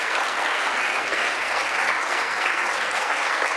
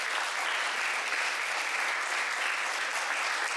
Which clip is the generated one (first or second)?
first